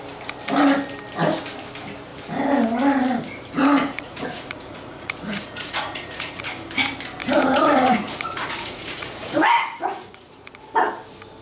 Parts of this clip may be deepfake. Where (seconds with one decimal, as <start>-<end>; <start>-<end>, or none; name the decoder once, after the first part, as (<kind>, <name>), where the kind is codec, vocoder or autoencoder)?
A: 3.6-6.4 (vocoder, Vocos); 7.2-10.7

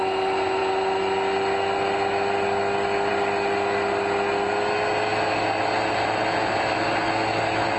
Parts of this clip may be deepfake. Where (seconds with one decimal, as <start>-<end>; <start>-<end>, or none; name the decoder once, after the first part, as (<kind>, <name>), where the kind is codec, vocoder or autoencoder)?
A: none

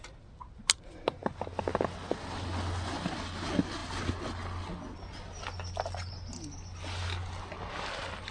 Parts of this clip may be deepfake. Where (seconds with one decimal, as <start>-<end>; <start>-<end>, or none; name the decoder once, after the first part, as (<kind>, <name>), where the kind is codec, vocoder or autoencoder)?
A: none

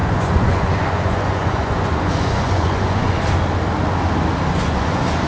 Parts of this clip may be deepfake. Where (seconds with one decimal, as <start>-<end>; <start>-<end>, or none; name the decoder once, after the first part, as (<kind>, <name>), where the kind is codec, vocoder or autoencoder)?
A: 0.0-3.2 (vocoder, Vocos); 4.5-5.3